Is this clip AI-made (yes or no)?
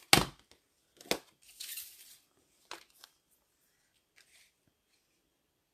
no